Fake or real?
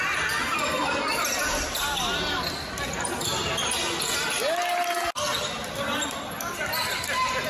real